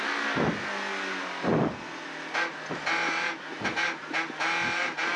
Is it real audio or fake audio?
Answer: real